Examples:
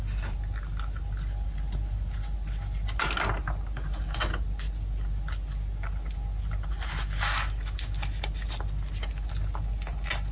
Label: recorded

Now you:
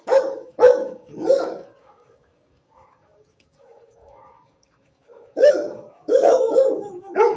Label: remade